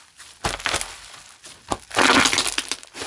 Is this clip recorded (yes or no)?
yes